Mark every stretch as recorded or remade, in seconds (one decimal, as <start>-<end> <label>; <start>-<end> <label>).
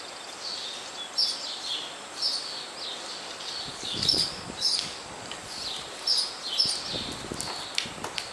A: 0.0-3.7 recorded; 3.7-5.4 remade; 5.4-8.3 recorded